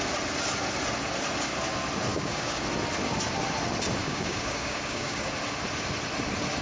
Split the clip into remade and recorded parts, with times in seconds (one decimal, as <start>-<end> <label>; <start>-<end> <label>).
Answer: 0.0-2.1 recorded; 2.1-2.6 remade; 2.6-4.0 recorded; 4.0-5.3 remade; 5.3-6.6 recorded